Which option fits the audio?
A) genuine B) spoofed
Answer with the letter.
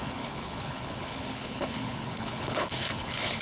B